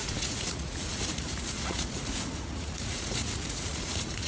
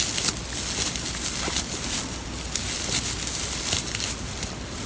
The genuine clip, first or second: second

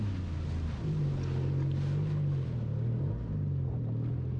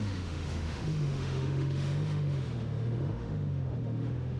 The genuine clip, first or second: first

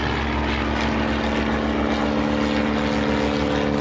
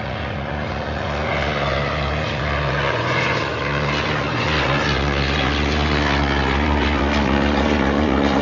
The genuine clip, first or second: first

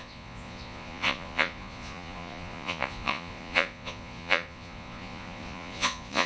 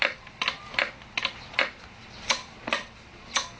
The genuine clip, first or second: second